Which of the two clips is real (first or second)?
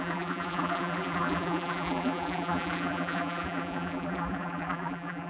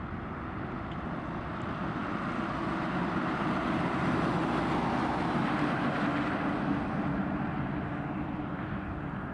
second